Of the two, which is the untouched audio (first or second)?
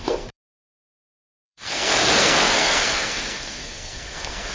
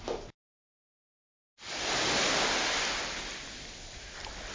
second